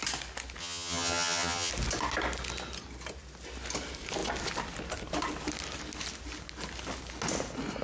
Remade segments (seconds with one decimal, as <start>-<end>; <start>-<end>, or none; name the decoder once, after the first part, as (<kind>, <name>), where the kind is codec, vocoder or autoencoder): 0.6-1.7 (vocoder, HiFi-GAN)